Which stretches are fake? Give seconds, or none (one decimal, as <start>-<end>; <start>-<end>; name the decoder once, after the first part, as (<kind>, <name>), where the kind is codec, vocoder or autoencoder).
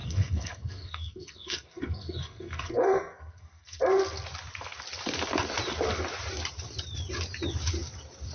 0.0-3.8 (codec, SNAC)